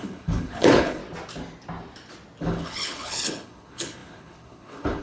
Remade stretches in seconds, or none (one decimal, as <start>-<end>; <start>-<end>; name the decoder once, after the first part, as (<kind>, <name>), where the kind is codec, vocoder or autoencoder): 0.0-1.0 (codec, HILCodec); 2.4-5.0